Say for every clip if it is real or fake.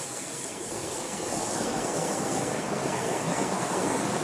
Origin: fake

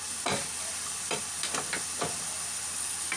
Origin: real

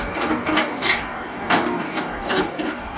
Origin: fake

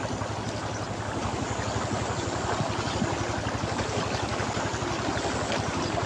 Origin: real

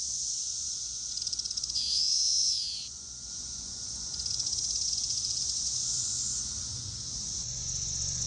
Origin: fake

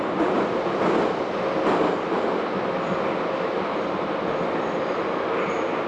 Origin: real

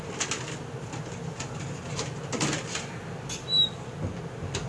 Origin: real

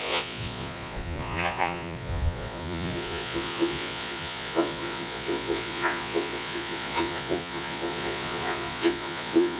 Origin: fake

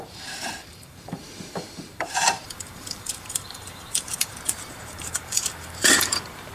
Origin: fake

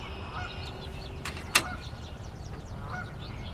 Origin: fake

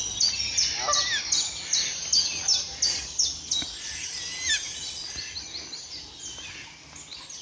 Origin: real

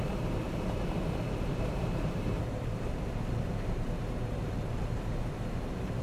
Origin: fake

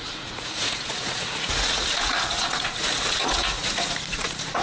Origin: fake